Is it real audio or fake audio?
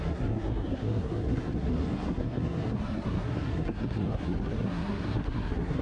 fake